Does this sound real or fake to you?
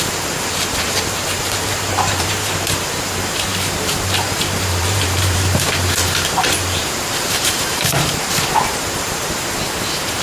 fake